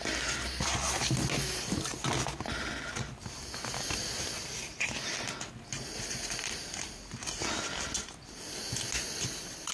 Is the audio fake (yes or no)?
no